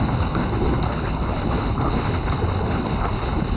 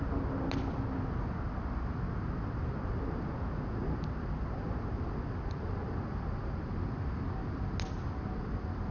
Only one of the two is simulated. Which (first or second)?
first